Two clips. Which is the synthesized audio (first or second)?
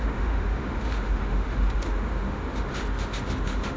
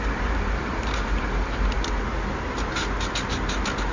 first